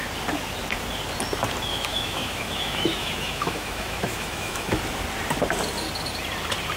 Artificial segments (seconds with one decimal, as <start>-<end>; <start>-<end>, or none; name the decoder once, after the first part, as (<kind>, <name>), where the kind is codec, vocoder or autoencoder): 1.7-4.8 (autoencoder, DAC-VAE)